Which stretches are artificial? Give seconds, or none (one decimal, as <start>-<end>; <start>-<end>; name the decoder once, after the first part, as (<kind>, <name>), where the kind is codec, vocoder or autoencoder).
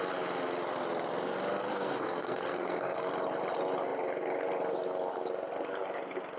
1.6-3.1 (codec, SNAC)